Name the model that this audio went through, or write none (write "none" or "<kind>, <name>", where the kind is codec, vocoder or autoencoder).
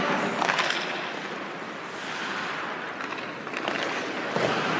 none